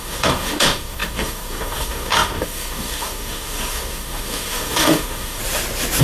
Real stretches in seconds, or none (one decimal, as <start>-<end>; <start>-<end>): 5.4-6.0